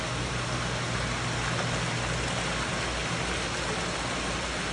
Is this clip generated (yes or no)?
no